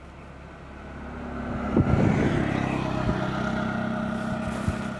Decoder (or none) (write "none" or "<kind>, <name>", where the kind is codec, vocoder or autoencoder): none